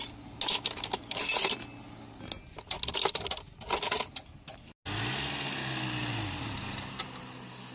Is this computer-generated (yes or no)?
no